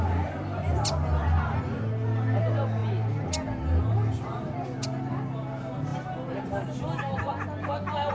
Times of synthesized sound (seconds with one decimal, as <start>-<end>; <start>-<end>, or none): none